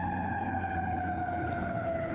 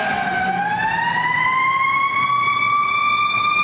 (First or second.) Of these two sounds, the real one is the second